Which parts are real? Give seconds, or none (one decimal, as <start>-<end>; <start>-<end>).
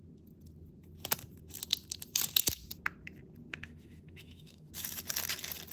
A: 0.0-3.5; 4.7-5.7